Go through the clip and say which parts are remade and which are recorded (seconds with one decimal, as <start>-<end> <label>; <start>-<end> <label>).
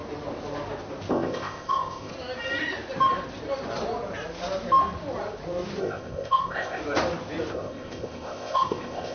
0.0-1.1 recorded; 1.1-2.1 remade; 2.1-5.8 recorded; 5.8-6.8 remade; 6.8-7.5 recorded; 7.5-9.1 remade